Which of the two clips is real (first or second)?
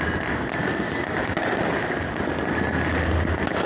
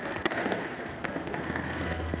first